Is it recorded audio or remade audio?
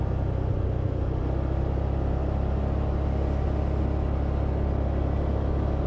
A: recorded